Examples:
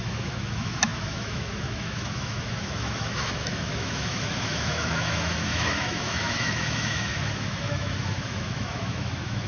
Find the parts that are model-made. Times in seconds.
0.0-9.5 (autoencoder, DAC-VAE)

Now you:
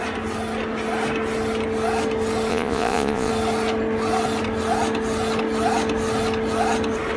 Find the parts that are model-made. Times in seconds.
2.5-3.3 (vocoder, Vocos)

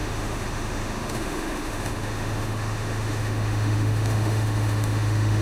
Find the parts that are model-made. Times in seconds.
0.0-5.4 (autoencoder, DAC-VAE)

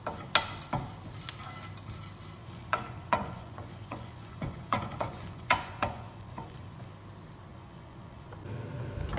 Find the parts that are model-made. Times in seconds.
2.4-6.9 (vocoder, Vocos); 7.5-8.3